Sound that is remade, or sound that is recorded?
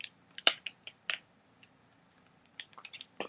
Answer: remade